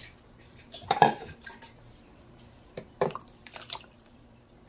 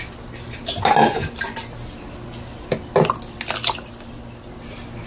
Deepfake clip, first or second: first